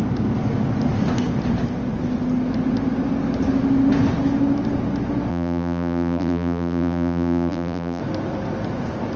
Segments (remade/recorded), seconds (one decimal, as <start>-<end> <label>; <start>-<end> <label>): 0.0-5.3 recorded; 5.3-8.0 remade; 8.0-9.2 recorded